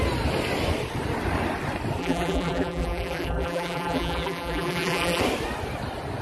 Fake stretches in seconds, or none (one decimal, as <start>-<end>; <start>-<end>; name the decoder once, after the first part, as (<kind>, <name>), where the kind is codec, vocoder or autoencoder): 2.0-5.2 (vocoder, BigVGAN v2)

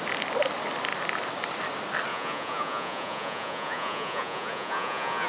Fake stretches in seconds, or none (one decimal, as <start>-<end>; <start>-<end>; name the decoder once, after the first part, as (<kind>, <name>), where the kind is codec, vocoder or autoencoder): 2.1-5.3 (vocoder, Vocos)

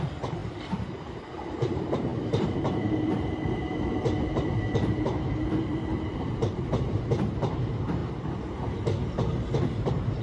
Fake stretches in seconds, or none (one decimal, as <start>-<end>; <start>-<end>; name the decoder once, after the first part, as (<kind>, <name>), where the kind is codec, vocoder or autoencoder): 0.0-8.0 (vocoder, BigVGAN v2); 9.5-10.2

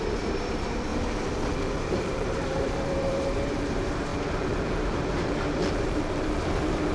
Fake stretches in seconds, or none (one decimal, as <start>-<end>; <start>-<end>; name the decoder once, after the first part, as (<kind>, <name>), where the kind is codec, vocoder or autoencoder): 0.0-0.9 (vocoder, BigVGAN v2); 1.8-4.1; 5.7-6.9

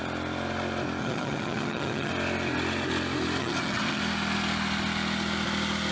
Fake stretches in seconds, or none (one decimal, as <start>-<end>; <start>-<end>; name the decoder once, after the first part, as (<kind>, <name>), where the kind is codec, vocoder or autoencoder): 1.0-2.1 (vocoder, HiFi-GAN); 3.4-4.0